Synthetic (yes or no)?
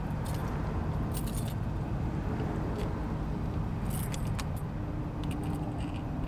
no